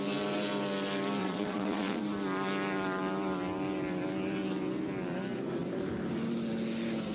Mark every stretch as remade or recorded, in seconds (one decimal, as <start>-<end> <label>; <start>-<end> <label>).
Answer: 0.0-1.2 recorded; 1.2-2.0 remade; 2.0-7.1 recorded